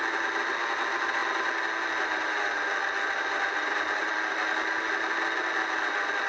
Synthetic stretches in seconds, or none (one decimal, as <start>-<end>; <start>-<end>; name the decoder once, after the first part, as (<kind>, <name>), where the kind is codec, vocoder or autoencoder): none

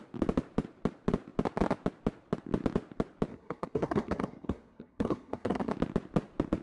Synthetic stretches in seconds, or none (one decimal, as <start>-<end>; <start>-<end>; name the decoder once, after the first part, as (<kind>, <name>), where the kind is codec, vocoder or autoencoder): 3.3-5.7 (codec, SNAC)

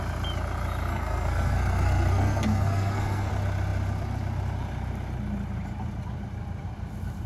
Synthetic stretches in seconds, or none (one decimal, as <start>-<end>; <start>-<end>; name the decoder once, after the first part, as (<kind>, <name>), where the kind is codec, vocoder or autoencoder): 0.9-3.3 (codec, SNAC)

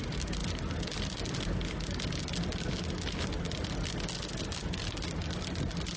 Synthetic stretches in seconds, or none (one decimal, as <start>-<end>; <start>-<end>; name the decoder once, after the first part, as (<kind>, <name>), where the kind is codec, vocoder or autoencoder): none

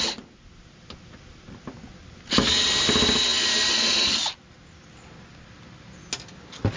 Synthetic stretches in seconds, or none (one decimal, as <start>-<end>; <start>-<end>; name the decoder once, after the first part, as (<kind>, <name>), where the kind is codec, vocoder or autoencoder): none